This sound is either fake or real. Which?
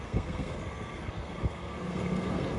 fake